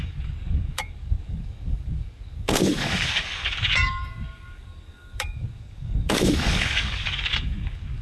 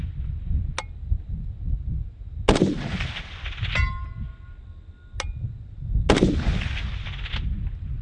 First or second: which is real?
second